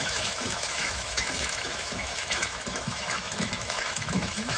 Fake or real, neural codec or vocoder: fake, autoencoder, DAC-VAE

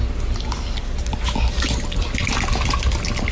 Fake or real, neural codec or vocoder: real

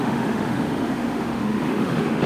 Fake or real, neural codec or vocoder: fake, autoencoder, DAC-VAE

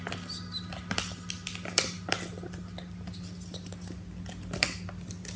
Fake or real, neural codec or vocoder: real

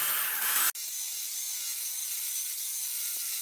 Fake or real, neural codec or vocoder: real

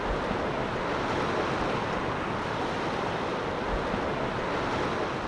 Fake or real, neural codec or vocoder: real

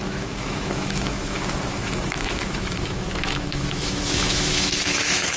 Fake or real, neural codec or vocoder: fake, autoencoder, DAC-VAE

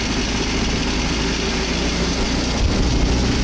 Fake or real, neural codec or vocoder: real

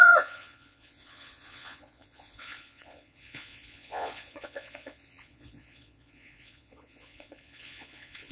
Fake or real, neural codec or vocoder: fake, vocoder, Vocos